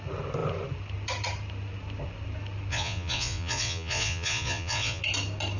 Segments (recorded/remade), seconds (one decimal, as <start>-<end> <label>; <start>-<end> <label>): 0.0-2.7 recorded; 2.7-5.0 remade; 5.0-5.6 recorded